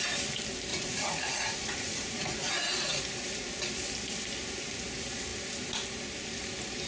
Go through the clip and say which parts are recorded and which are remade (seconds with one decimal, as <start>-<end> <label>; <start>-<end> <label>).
0.0-0.7 recorded; 0.7-2.5 remade; 2.5-6.9 recorded